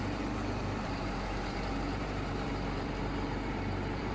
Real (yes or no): no